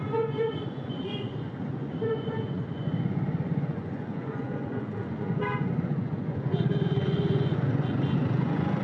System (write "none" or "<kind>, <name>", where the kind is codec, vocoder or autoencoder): vocoder, Vocos